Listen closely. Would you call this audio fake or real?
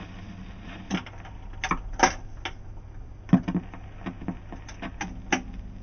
real